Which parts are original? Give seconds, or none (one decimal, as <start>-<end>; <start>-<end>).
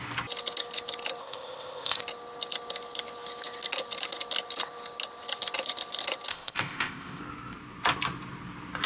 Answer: 0.0-1.2; 2.0-6.3; 7.2-8.9